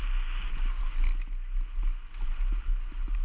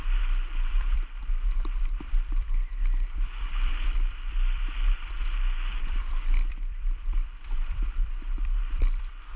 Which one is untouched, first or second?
first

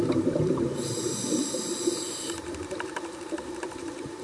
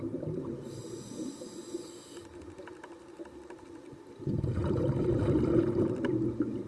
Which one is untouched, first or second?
second